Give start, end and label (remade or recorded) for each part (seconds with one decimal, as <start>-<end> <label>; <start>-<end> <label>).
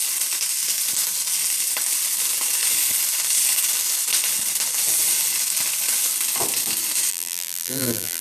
0.0-7.1 recorded; 7.1-8.2 remade